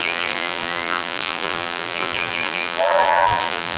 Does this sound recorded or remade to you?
remade